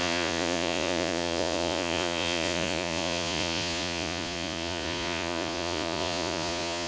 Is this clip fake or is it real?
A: fake